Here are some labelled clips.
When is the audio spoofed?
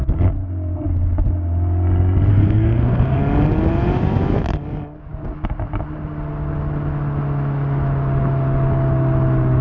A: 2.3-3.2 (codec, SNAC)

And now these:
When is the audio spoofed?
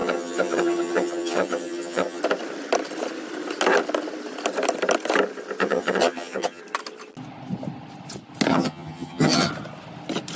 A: 0.0-2.2 (vocoder, HiFi-GAN); 5.6-6.6; 8.5-9.5